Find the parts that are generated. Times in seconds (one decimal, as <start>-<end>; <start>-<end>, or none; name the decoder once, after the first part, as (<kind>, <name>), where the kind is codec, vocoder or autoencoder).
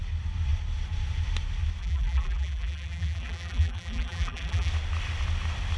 1.8-4.7 (vocoder, BigVGAN v2)